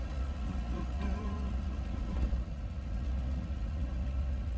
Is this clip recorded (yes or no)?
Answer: no